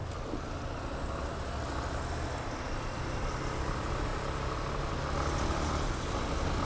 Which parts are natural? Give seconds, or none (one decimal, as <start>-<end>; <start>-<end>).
0.0-6.6